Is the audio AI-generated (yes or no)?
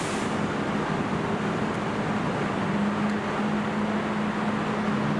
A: no